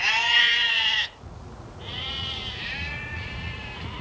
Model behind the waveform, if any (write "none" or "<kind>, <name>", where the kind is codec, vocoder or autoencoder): vocoder, Vocos